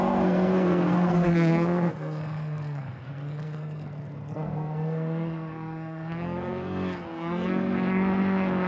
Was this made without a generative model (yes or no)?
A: no